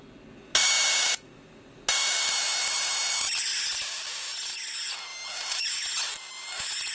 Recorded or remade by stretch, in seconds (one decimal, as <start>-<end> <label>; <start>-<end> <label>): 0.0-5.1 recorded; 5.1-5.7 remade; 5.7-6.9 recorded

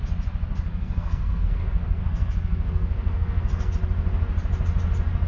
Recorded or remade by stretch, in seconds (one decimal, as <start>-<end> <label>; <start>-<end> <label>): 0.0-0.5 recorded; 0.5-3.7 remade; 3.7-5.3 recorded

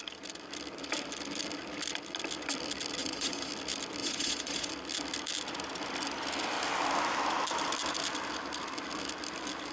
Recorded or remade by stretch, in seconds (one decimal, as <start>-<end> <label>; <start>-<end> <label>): 0.0-3.0 recorded; 3.0-3.5 remade; 3.5-4.0 recorded; 4.0-4.7 remade; 4.7-9.7 recorded

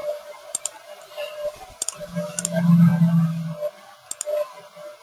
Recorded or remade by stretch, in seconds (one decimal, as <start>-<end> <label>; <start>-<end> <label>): 0.0-2.0 remade; 2.0-5.0 recorded

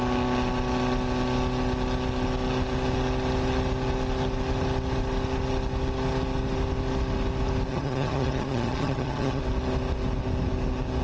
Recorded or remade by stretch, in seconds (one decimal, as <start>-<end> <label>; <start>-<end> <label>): 0.0-7.7 recorded; 7.7-9.4 remade; 9.4-11.0 recorded

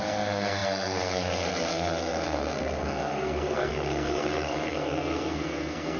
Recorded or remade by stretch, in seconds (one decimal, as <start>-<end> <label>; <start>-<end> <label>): 0.0-6.0 remade

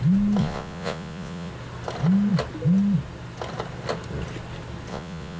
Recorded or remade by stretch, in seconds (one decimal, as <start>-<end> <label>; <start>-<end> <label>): 0.0-0.4 recorded; 0.4-1.5 remade; 1.5-4.9 recorded; 4.9-5.4 remade